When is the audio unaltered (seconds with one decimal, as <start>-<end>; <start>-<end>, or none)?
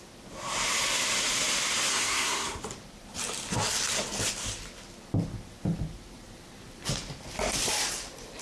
0.0-1.9; 2.6-8.4